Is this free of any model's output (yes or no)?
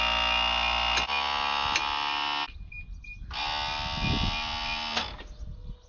yes